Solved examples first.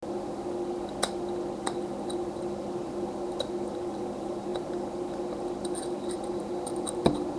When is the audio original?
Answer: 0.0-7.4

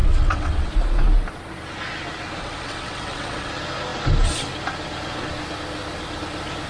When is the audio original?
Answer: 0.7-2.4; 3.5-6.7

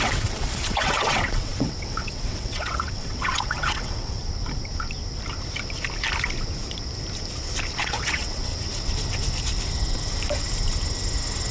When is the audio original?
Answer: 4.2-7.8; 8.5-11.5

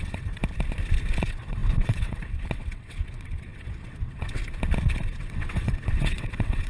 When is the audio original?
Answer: 0.4-1.2; 4.4-5.2

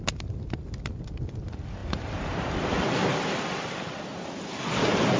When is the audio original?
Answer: 0.0-5.2

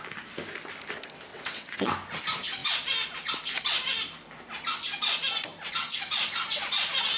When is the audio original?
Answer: 0.0-1.3; 1.9-7.2

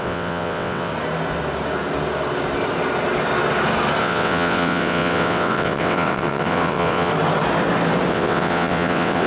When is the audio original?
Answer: 0.9-4.0; 7.1-8.1

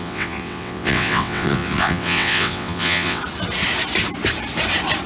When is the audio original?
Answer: 3.2-5.1